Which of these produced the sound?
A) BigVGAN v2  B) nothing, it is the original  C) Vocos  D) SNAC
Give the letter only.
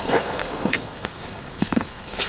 D